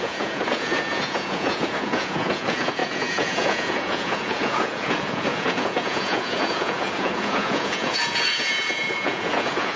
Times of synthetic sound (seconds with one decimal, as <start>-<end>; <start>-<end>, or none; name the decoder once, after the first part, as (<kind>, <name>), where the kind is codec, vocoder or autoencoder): 0.0-9.8 (vocoder, Vocos)